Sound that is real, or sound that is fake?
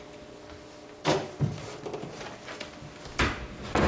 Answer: real